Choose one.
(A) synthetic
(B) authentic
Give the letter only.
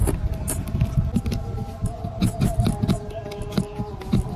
B